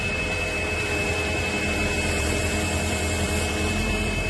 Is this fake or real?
fake